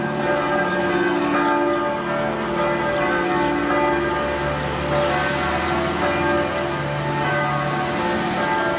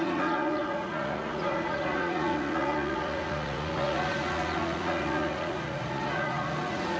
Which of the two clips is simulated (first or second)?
second